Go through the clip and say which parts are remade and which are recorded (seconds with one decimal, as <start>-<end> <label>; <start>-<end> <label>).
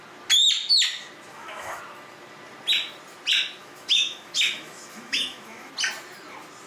0.0-1.3 recorded; 1.3-1.8 remade; 1.8-3.6 recorded; 3.6-5.7 remade; 5.7-6.7 recorded